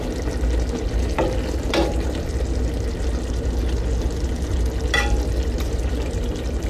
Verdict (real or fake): real